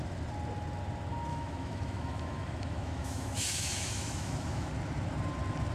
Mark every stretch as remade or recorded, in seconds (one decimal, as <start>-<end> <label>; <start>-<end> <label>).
0.0-1.3 recorded; 1.3-4.7 remade; 4.7-5.7 recorded